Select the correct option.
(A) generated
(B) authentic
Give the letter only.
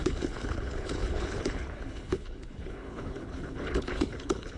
A